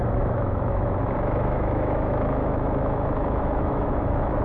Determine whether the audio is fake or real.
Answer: fake